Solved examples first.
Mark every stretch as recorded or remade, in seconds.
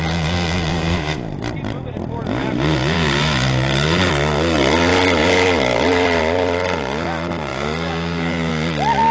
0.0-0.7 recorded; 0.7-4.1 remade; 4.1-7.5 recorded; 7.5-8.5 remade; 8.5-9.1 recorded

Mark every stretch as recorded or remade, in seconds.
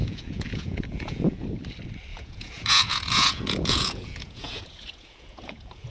0.0-1.5 remade; 1.5-2.1 recorded; 2.1-5.9 remade